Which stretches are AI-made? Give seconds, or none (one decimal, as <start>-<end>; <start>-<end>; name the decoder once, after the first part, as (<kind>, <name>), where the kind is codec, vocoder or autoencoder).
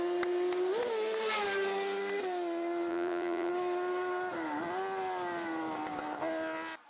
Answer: 2.9-3.5 (vocoder, BigVGAN v2)